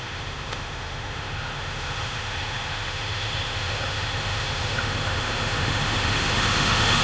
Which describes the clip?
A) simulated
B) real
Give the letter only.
A